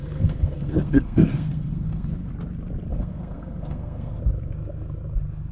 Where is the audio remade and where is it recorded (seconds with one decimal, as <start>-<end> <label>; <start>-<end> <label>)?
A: 0.0-2.3 remade; 2.3-2.9 recorded; 2.9-4.2 remade; 4.2-5.5 recorded